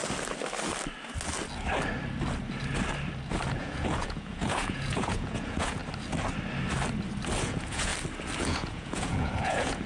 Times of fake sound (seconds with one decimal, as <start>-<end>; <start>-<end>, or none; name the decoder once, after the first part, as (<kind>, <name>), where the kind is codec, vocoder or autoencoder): 3.5-5.8 (vocoder, Vocos); 7.4-7.9; 8.4-9.9